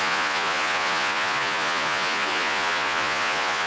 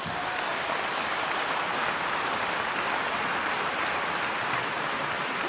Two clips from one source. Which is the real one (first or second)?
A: second